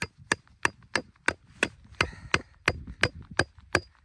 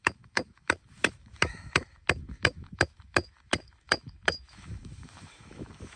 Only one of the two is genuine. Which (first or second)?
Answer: first